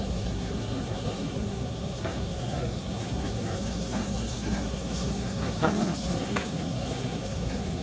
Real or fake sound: fake